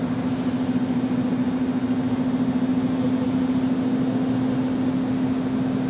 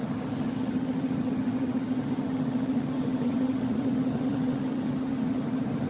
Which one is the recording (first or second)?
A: first